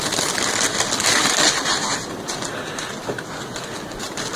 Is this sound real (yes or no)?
yes